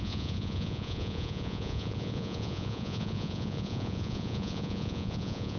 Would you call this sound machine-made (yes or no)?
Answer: yes